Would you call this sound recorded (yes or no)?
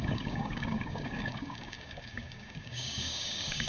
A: no